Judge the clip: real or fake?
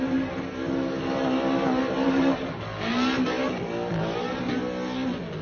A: real